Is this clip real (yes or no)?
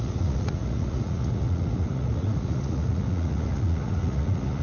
no